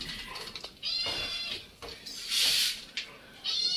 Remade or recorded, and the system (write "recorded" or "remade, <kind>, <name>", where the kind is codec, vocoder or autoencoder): recorded